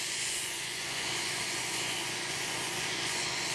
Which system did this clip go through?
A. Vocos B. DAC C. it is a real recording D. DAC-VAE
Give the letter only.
A